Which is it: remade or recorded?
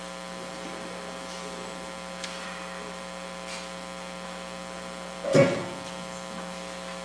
recorded